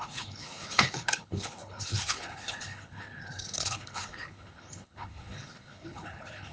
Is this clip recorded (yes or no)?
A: no